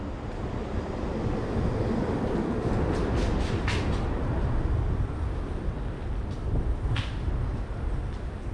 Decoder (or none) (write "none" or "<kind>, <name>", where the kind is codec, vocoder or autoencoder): none